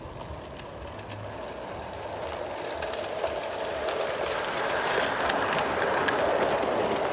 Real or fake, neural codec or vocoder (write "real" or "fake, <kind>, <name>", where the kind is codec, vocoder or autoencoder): real